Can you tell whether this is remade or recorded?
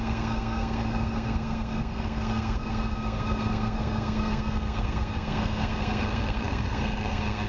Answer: remade